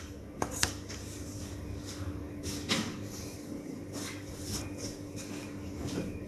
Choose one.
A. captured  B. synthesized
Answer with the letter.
B